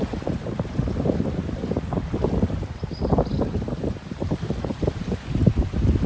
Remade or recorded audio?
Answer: remade